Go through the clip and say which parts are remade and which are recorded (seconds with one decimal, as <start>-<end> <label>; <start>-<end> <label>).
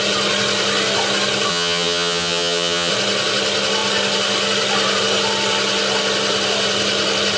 0.0-1.5 recorded; 1.5-2.9 remade; 2.9-7.4 recorded